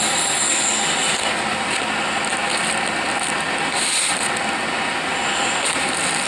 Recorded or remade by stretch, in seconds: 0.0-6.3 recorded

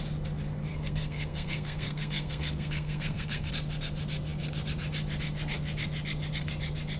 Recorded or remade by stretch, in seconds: 0.0-0.7 recorded; 0.7-3.5 remade; 3.5-7.0 recorded

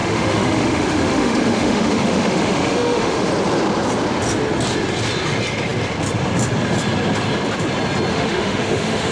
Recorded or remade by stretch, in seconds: 0.0-3.3 remade; 3.3-8.1 recorded; 8.1-9.1 remade

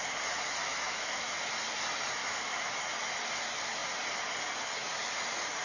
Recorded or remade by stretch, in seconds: 0.0-0.7 recorded; 0.7-1.5 remade; 1.5-2.2 recorded; 2.2-2.8 remade; 2.8-5.6 recorded

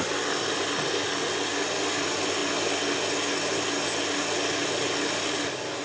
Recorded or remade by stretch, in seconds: 0.0-5.8 recorded

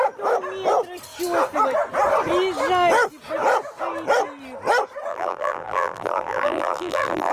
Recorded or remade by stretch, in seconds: 0.0-5.1 recorded; 5.1-7.3 remade